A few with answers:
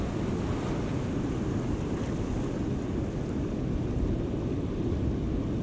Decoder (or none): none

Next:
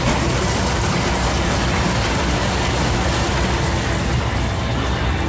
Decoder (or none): none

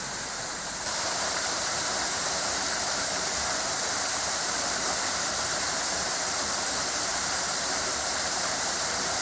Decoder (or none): vocoder, BigVGAN v2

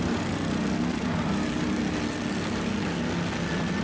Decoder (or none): none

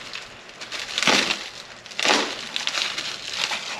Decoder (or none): none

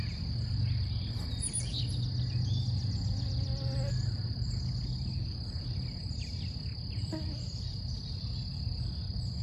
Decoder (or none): none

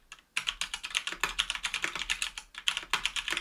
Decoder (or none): none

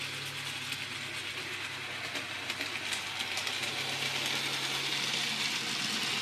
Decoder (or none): none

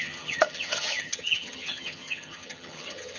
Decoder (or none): vocoder, HiFi-GAN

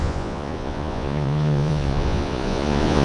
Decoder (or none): vocoder, Vocos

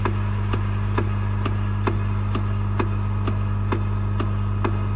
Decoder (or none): none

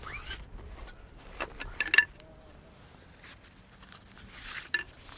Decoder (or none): none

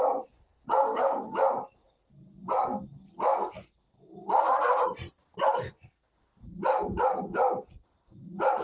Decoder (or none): none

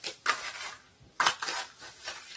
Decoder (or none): none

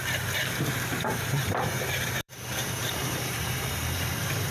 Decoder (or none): vocoder, BigVGAN v2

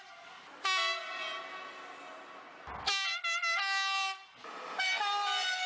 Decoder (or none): none